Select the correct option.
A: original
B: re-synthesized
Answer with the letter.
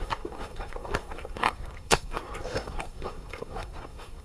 B